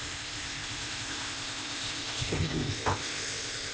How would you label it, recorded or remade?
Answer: remade